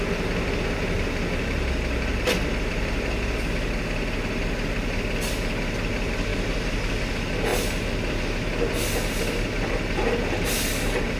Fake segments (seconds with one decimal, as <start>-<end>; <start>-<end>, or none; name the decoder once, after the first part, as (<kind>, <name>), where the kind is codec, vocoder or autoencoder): 2.1-3.4 (vocoder, BigVGAN v2); 6.3-7.1